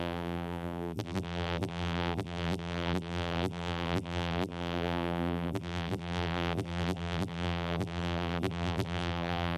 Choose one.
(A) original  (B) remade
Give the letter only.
B